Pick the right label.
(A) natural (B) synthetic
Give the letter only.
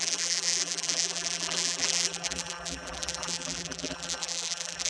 B